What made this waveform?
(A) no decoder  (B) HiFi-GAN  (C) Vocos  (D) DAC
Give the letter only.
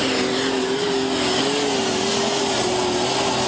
A